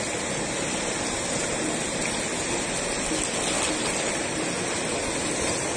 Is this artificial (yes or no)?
no